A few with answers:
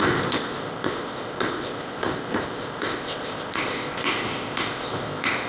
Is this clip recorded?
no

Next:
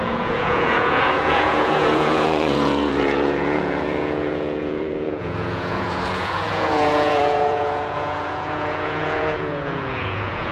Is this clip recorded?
no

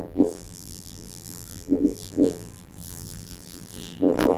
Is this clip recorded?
no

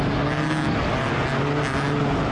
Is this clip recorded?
yes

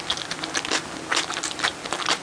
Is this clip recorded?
yes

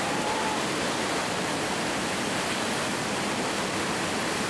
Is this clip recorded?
yes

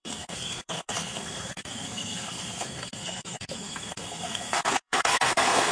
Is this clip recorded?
no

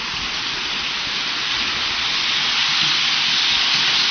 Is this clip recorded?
yes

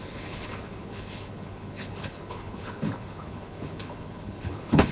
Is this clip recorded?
no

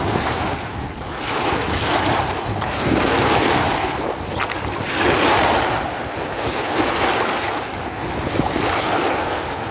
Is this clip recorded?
yes